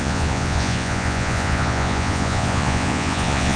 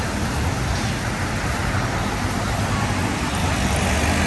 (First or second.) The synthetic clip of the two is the first